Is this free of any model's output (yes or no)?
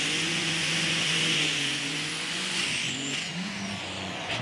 no